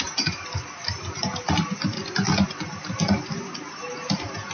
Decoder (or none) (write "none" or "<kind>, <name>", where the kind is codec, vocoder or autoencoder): none